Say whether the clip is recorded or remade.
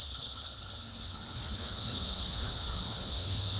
remade